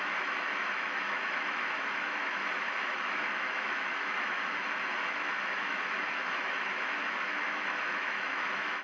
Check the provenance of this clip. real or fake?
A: fake